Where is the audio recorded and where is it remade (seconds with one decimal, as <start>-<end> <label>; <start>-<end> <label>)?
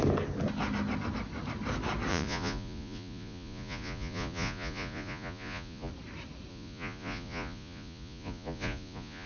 0.0-2.1 recorded; 2.1-5.9 remade; 5.9-6.5 recorded; 6.5-9.3 remade